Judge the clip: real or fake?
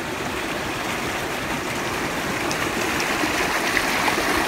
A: fake